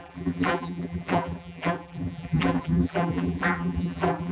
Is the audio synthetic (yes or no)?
yes